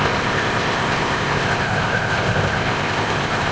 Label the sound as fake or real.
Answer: fake